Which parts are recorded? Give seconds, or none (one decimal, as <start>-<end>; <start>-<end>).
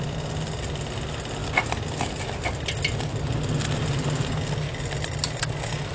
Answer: 0.0-5.9